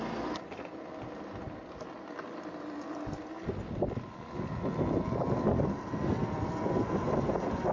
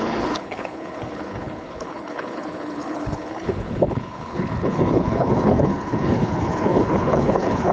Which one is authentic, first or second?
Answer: first